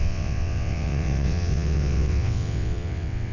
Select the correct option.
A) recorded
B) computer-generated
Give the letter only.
B